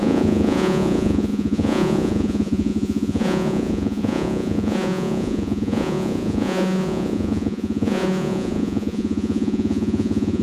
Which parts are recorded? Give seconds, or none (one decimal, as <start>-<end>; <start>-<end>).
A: none